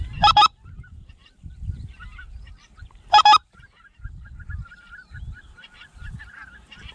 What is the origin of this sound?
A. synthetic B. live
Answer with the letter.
A